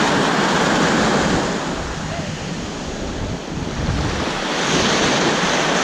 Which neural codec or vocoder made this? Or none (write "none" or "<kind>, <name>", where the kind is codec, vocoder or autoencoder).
none